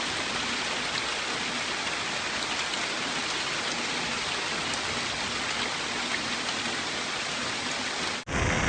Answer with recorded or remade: recorded